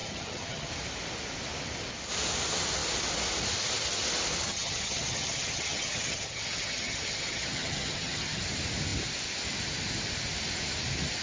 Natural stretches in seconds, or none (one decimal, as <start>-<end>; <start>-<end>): 0.7-4.4; 8.4-11.2